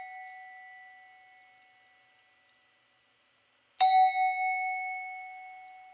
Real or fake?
real